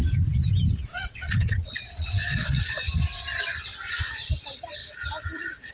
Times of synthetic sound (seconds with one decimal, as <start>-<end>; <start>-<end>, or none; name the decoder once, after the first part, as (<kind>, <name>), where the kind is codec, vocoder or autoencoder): 0.9-2.6 (vocoder, WaveNeXt)